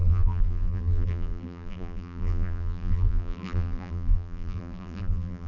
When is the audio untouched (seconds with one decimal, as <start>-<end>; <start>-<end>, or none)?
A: none